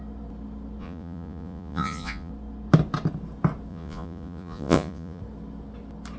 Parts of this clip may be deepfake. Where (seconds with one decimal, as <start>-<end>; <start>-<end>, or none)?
0.8-2.3; 3.7-5.2